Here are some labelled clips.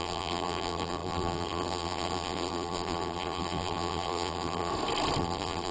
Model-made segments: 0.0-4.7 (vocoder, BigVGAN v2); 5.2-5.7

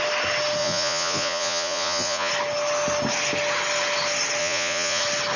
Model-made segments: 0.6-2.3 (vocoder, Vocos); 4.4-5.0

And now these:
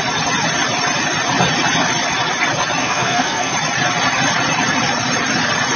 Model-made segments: 2.8-3.5 (codec, SNAC)

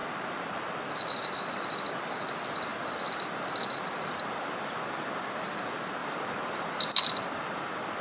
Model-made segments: 0.0-0.9 (vocoder, BigVGAN v2); 6.0-7.0